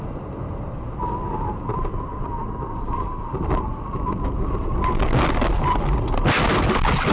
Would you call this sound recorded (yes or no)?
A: yes